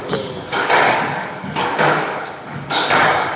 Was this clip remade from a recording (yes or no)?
yes